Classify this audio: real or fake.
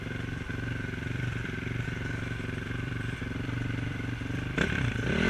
fake